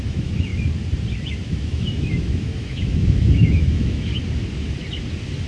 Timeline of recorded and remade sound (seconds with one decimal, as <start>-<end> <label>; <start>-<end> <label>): 0.0-0.5 remade; 0.5-1.3 recorded; 1.3-4.1 remade; 4.1-5.5 recorded